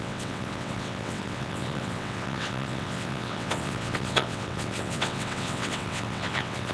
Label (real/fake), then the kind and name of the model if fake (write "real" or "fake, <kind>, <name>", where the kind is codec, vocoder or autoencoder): fake, vocoder, WaveNeXt